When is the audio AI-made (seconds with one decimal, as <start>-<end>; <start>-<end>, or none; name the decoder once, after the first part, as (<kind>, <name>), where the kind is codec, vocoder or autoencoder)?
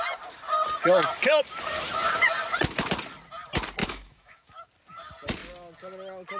3.8-4.6 (autoencoder, DAC-VAE)